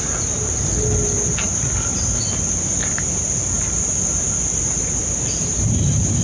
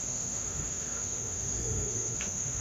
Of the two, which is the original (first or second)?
first